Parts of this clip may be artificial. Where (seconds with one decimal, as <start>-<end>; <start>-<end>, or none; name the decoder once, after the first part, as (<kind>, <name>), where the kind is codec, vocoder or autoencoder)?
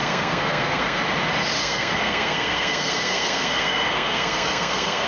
0.0-1.0 (codec, SNAC); 1.6-5.1